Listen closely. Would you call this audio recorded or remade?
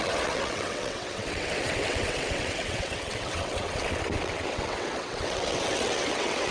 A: remade